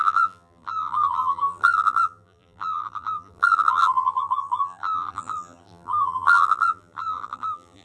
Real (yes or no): no